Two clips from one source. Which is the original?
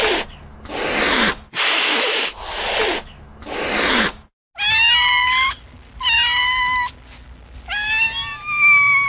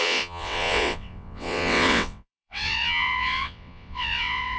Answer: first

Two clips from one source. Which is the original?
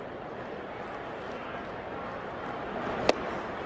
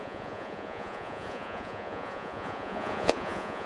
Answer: first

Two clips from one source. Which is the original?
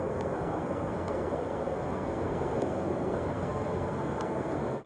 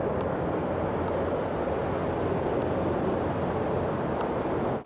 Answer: second